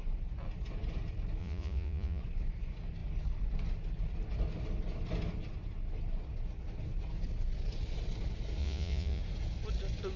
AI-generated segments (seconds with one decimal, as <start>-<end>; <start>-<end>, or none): 1.4-2.2; 8.6-9.2